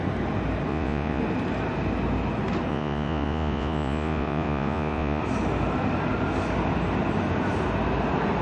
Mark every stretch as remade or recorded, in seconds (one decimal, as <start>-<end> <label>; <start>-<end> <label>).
0.0-0.7 recorded; 0.7-1.2 remade; 1.2-2.7 recorded; 2.7-5.2 remade; 5.2-8.4 recorded